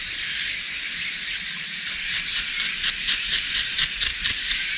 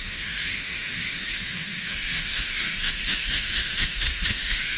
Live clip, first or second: first